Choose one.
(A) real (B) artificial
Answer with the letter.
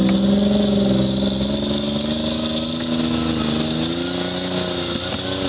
A